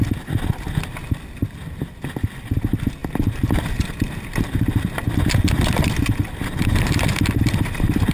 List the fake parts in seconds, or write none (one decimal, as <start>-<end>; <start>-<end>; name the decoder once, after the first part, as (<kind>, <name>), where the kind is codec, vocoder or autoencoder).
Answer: none

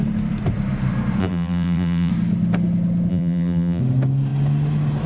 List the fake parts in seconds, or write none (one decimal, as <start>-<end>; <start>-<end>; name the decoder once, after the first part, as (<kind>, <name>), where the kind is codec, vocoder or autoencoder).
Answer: 1.2-2.1 (vocoder, BigVGAN v2); 3.1-3.8

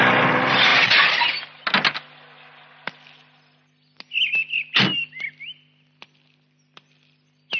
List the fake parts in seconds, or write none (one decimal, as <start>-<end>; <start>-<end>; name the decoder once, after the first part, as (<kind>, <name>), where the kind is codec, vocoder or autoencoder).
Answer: none